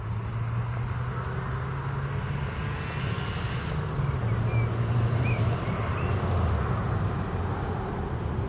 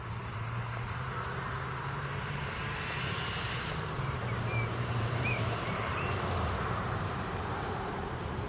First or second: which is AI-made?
second